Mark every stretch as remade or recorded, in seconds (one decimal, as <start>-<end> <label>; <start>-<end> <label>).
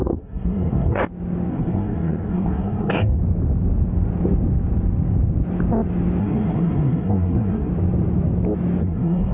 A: 0.0-1.0 remade; 1.0-1.5 recorded; 1.5-3.2 remade; 3.2-6.2 recorded; 6.2-7.7 remade; 7.7-8.8 recorded; 8.8-9.3 remade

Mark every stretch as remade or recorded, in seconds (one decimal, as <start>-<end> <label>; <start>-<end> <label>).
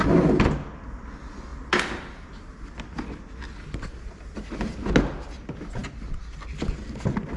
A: 0.0-7.4 recorded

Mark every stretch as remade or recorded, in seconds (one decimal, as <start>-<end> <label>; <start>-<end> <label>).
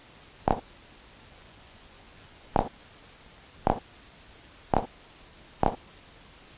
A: 0.0-1.3 recorded; 1.3-2.5 remade; 2.5-6.6 recorded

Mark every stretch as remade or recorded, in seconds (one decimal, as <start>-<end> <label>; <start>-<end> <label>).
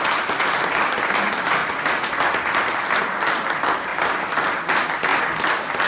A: 0.0-1.6 recorded; 1.6-2.1 remade; 2.1-5.9 recorded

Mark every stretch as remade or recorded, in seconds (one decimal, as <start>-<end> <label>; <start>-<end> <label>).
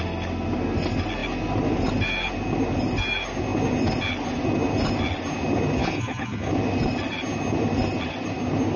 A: 0.0-5.8 recorded; 5.8-6.5 remade; 6.5-8.8 recorded